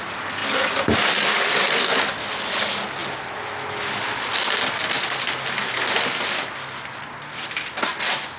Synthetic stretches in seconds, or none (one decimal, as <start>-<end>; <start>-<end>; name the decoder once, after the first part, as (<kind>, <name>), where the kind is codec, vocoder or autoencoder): none